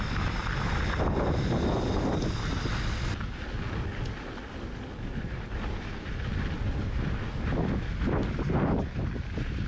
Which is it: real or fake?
real